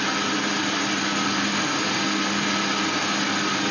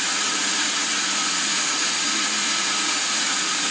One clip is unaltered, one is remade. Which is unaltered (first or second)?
first